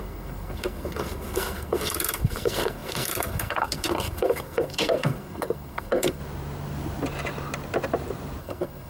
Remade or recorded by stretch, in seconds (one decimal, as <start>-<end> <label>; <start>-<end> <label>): 0.0-6.2 remade; 6.2-8.4 recorded; 8.4-8.9 remade